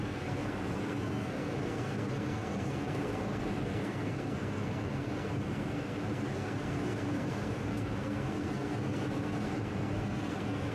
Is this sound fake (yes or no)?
yes